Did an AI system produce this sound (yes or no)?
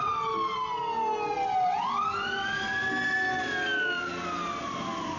no